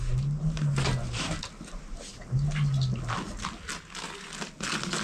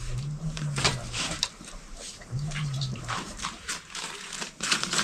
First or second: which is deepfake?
second